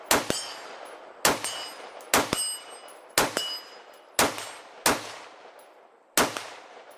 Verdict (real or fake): real